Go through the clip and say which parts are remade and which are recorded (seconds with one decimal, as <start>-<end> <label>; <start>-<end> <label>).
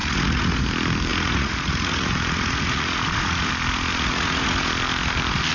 0.0-0.6 remade; 0.6-1.1 recorded; 1.1-3.5 remade; 3.5-3.9 recorded; 3.9-4.7 remade; 4.7-5.5 recorded